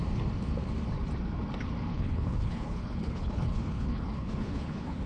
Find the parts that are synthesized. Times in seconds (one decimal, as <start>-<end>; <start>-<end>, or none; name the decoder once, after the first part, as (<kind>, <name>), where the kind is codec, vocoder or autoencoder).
1.9-5.1 (codec, HILCodec)